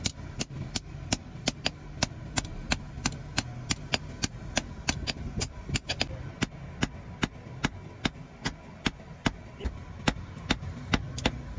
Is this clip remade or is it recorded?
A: recorded